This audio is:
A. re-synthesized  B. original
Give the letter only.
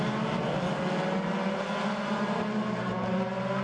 B